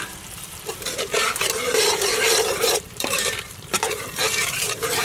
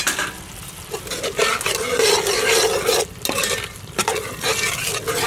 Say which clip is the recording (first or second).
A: second